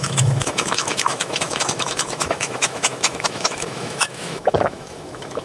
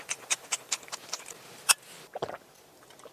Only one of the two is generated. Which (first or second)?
first